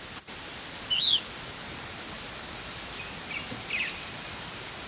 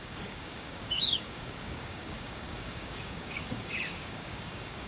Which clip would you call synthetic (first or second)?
second